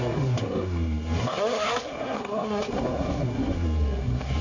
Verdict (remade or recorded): remade